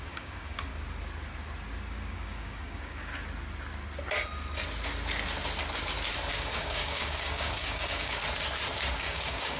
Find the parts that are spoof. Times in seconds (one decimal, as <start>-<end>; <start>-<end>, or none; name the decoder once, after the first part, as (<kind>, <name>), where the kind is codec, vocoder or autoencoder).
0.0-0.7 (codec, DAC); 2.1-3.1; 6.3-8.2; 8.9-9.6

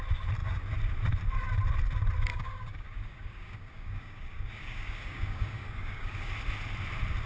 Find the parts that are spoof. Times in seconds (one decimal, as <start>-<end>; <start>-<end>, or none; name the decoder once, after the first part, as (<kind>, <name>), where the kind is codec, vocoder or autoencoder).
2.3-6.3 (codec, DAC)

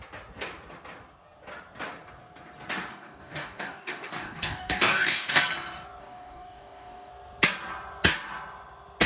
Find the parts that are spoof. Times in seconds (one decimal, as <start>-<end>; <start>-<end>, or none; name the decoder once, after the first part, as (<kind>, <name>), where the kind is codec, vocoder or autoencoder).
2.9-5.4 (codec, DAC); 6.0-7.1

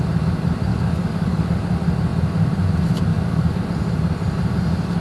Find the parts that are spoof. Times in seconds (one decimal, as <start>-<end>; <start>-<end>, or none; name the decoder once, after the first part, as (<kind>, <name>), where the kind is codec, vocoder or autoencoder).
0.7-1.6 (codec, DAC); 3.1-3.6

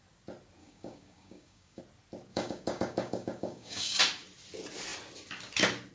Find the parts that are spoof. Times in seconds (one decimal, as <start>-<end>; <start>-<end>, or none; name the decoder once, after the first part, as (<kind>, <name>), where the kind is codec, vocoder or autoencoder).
0.6-1.8 (codec, DAC); 2.3-4.0